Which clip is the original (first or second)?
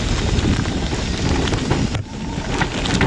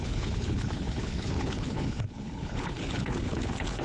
first